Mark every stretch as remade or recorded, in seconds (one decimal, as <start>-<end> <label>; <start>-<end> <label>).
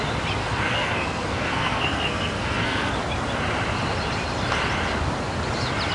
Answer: 0.0-0.4 recorded; 0.4-2.9 remade; 2.9-5.9 recorded